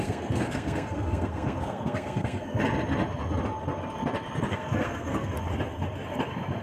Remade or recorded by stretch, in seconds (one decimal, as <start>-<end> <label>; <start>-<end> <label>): 0.0-2.6 remade; 2.6-4.5 recorded; 4.5-5.3 remade; 5.3-6.6 recorded